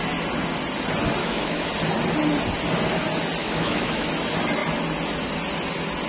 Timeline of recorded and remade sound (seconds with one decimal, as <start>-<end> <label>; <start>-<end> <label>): 0.0-1.2 recorded; 1.2-1.7 remade; 1.7-3.4 recorded; 3.4-4.1 remade; 4.1-6.1 recorded